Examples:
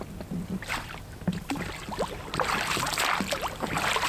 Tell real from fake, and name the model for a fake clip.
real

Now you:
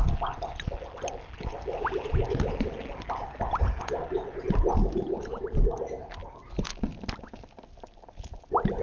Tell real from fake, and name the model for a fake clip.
real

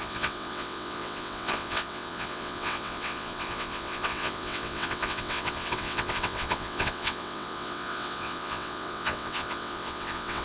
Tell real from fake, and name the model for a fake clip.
fake, vocoder, WaveNeXt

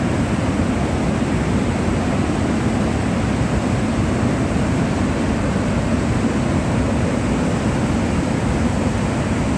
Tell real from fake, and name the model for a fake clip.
real